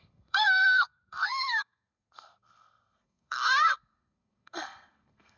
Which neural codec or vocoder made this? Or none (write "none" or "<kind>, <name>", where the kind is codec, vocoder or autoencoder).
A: codec, SNAC